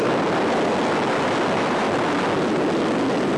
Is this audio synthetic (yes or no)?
no